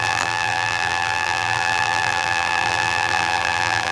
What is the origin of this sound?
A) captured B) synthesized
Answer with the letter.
B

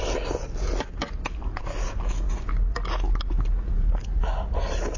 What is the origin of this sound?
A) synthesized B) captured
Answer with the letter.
B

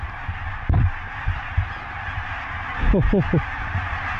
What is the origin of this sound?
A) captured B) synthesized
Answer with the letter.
A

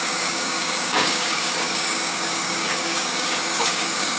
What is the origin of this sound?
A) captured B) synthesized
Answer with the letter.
B